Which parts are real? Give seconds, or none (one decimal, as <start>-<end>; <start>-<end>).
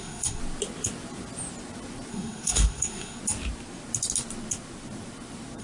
0.4-2.1; 3.2-5.6